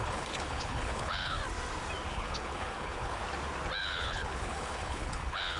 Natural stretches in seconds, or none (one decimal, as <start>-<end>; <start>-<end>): 1.4-2.1; 3.2-3.8